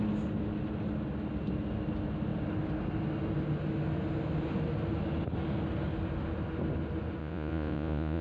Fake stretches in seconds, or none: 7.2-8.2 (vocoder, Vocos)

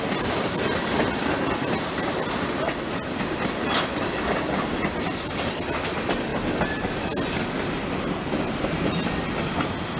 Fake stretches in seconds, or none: none

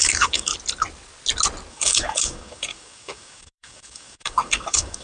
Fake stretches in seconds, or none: 0.0-0.5 (codec, DAC); 1.7-5.0

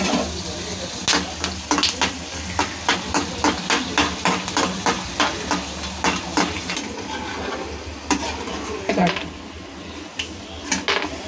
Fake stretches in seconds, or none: none

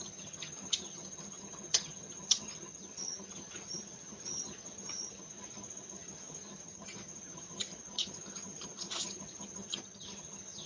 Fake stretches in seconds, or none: 0.0-5.3 (vocoder, HiFi-GAN); 5.9-10.7

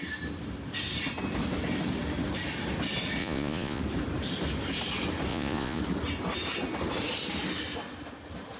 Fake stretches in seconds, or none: 3.2-3.8 (vocoder, Vocos); 5.3-5.8

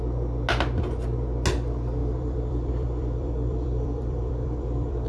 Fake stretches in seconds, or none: 2.0-5.1 (vocoder, BigVGAN v2)

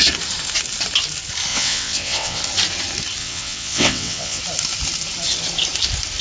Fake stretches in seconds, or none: 1.5-2.4 (vocoder, WaveNeXt); 3.2-4.4